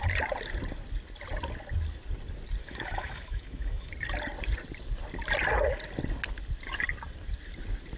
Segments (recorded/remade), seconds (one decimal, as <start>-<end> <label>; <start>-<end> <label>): 0.0-2.6 recorded; 2.6-3.9 remade; 3.9-8.0 recorded